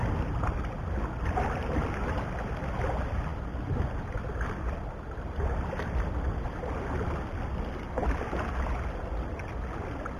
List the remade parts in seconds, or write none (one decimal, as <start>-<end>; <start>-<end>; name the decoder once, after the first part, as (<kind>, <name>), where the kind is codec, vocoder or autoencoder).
none